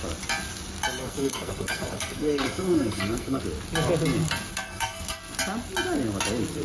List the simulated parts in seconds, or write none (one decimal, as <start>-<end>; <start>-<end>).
1.0-3.4; 4.5-5.2